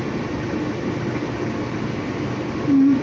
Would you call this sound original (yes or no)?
yes